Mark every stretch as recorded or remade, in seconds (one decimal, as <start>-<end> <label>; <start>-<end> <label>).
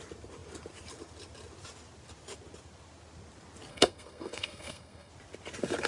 0.0-3.7 recorded; 3.7-5.1 remade; 5.1-5.9 recorded